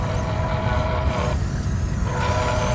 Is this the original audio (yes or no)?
yes